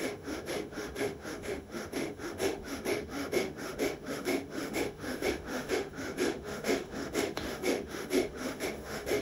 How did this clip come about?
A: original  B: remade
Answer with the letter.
B